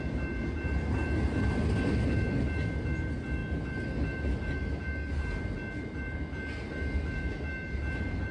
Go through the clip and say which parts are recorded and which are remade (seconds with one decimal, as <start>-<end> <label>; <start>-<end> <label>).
0.0-8.3 recorded